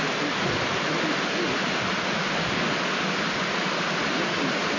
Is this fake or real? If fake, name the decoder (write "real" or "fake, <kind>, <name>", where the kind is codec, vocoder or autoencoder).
real